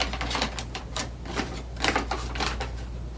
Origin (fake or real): real